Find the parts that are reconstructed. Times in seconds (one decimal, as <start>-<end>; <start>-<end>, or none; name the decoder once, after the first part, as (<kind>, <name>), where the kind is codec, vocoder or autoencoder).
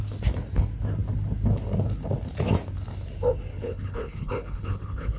3.5-5.2 (codec, HILCodec)